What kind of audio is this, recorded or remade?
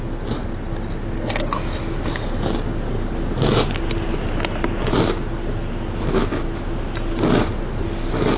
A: recorded